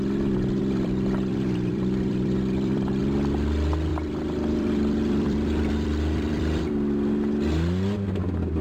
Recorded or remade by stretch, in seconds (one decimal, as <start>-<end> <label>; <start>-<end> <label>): 0.0-0.6 recorded; 0.6-3.0 remade; 3.0-3.9 recorded; 3.9-6.6 remade; 6.6-8.6 recorded

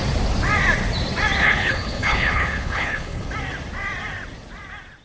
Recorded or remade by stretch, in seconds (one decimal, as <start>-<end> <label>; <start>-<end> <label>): 0.0-1.4 recorded; 1.4-3.3 remade; 3.3-5.0 recorded